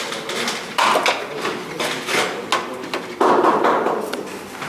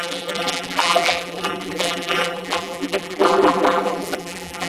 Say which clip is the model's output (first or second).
second